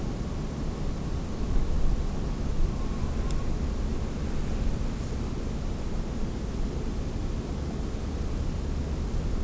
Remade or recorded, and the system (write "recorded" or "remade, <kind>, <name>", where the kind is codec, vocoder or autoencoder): recorded